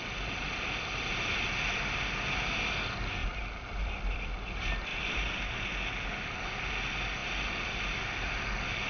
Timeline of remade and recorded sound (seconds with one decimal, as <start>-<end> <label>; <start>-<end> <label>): 0.0-3.2 recorded; 3.2-4.5 remade; 4.5-4.9 recorded; 4.9-5.5 remade; 5.5-8.9 recorded